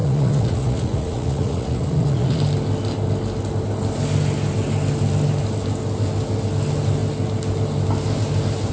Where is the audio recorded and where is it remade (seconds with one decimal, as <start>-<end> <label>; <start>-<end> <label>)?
0.0-2.4 remade; 2.4-8.7 recorded